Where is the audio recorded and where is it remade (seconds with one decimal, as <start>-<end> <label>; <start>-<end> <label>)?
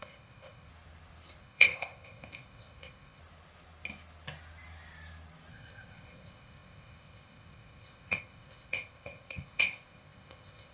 0.0-0.7 remade; 0.7-1.4 recorded; 1.4-3.2 remade; 3.2-5.5 recorded; 5.5-10.7 remade